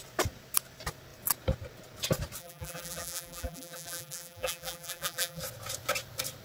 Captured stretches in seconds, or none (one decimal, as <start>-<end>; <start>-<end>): 0.0-2.4; 5.4-6.4